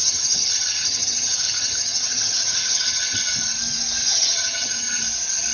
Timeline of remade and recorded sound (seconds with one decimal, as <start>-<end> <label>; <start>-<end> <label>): 0.0-3.3 remade; 3.3-4.0 recorded; 4.0-5.0 remade; 5.0-5.5 recorded